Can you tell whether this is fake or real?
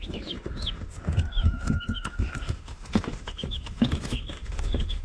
fake